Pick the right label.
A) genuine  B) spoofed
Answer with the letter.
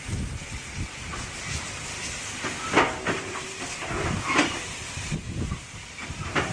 B